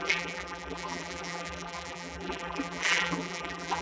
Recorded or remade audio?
remade